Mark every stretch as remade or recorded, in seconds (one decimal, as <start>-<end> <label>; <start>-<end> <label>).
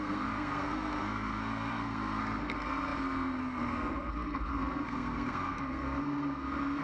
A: 0.0-6.8 remade